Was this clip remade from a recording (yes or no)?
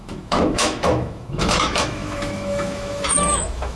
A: yes